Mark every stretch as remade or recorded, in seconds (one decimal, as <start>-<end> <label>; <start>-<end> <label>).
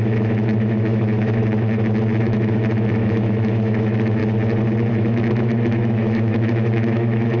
0.0-1.4 remade; 1.4-2.2 recorded; 2.2-4.2 remade; 4.2-4.9 recorded; 4.9-7.4 remade